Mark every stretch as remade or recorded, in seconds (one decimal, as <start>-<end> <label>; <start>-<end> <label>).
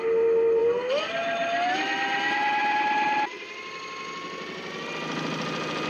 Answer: 0.0-5.9 recorded